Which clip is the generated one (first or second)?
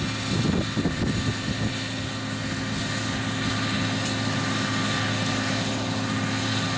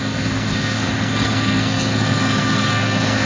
second